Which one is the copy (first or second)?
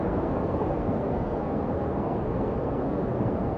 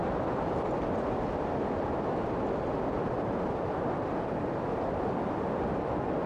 first